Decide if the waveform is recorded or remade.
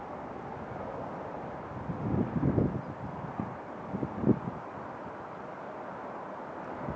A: recorded